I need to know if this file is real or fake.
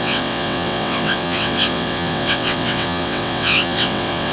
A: fake